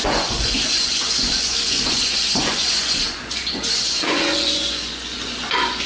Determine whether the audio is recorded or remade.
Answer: remade